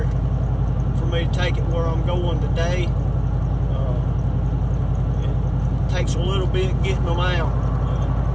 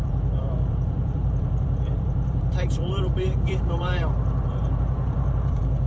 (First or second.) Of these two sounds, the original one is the first